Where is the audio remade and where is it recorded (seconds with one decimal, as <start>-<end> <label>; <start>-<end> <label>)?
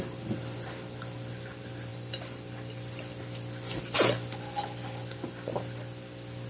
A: 0.0-1.9 recorded; 1.9-3.1 remade; 3.1-6.5 recorded